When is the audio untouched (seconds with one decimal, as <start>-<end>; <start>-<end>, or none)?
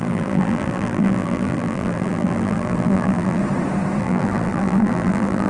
3.4-4.0